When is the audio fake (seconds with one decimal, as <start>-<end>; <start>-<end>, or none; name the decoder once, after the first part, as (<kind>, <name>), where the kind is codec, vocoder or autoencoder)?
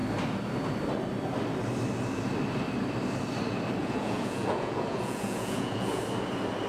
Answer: 3.8-6.0 (vocoder, Vocos)